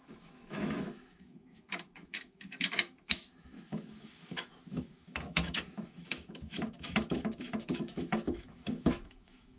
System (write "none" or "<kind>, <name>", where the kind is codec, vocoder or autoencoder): autoencoder, DAC-VAE